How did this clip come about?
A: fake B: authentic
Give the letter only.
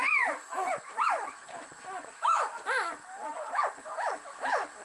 A